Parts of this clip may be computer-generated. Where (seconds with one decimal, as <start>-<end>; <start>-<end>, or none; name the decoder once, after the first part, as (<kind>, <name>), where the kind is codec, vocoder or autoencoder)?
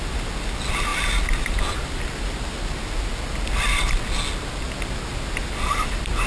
none